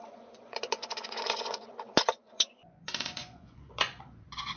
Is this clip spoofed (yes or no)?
yes